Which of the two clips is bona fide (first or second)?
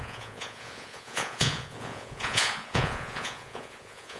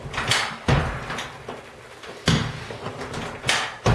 second